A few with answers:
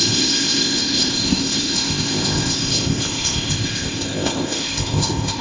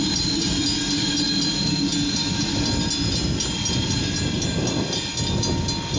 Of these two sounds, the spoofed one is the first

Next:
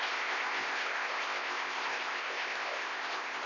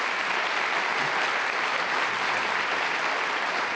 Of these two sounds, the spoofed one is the first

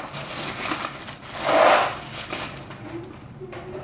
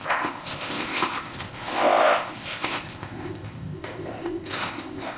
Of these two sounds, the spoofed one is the second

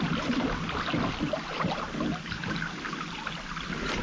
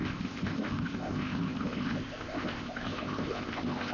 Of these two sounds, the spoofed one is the second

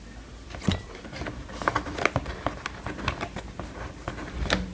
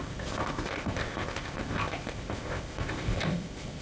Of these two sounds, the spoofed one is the second